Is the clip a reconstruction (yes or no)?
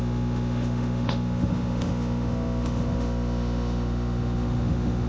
yes